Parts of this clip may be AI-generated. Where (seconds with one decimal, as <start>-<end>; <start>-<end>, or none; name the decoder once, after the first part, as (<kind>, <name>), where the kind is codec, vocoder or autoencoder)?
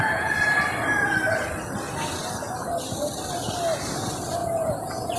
0.0-0.5 (vocoder, Vocos); 4.4-5.2